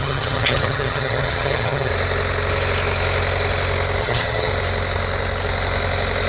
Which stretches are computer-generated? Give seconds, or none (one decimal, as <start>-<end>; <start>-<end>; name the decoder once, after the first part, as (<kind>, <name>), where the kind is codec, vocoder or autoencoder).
0.0-1.9 (vocoder, HiFi-GAN); 4.0-4.5